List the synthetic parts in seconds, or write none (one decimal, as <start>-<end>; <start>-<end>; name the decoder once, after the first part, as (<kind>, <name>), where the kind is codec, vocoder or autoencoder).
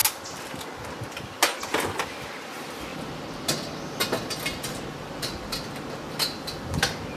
none